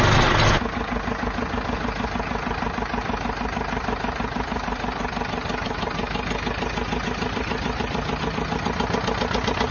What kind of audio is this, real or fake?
real